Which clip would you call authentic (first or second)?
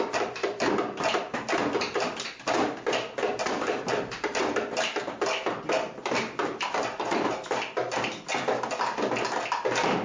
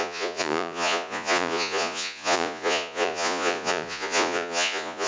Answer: first